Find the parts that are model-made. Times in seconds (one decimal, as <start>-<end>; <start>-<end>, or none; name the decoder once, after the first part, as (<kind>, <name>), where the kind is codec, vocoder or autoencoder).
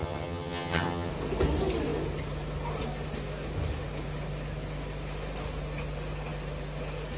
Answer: 0.0-1.1 (vocoder, HiFi-GAN)